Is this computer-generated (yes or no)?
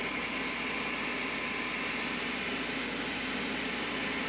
no